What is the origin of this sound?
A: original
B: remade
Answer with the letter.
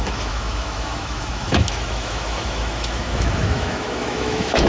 B